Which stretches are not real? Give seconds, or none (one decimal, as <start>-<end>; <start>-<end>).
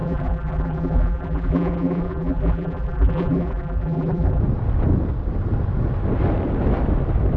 0.0-4.4